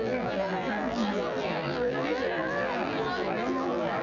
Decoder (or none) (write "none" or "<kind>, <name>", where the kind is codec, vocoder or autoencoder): vocoder, BigVGAN v2